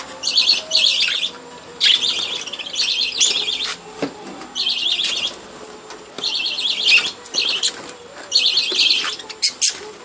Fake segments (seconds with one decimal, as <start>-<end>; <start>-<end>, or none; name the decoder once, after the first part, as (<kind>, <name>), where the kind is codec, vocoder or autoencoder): none